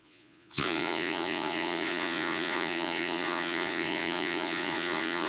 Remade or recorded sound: remade